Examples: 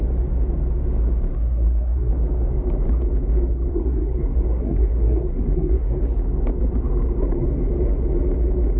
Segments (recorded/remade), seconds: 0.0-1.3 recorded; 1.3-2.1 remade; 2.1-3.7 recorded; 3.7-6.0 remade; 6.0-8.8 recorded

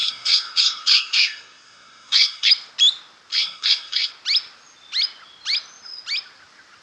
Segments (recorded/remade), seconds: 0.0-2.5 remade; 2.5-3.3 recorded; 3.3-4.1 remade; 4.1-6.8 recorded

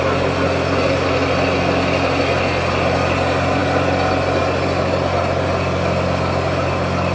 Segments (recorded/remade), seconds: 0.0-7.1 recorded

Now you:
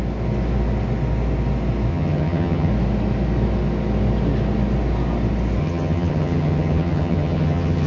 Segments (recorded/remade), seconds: 0.0-1.9 recorded; 1.9-2.7 remade; 2.7-5.6 recorded; 5.6-7.9 remade